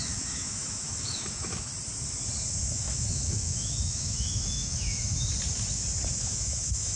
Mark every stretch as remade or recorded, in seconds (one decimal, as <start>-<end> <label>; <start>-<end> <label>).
0.0-1.7 remade; 1.7-2.6 recorded; 2.6-5.1 remade; 5.1-6.2 recorded; 6.2-7.0 remade